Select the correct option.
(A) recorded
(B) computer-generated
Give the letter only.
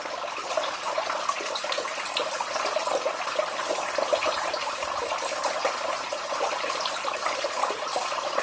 A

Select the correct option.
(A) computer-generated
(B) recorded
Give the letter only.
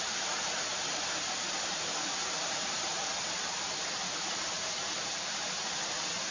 B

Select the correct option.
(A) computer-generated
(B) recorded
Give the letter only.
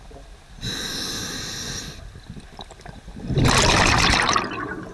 B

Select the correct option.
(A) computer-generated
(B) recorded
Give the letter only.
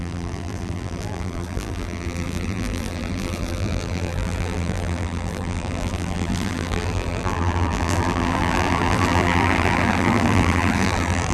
A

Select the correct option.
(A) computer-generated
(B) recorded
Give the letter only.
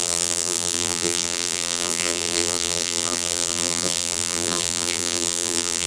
A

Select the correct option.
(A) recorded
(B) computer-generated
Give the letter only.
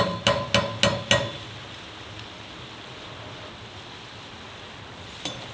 A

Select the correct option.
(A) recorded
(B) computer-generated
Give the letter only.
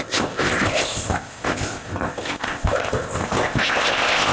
B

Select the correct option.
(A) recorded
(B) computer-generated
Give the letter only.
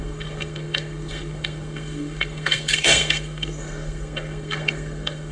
B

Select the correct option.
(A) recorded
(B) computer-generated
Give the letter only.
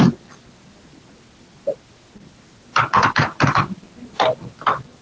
A